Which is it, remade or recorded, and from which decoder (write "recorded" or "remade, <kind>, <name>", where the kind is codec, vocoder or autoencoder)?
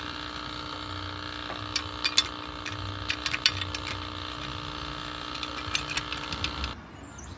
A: recorded